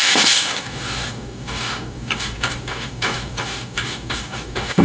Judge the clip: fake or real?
fake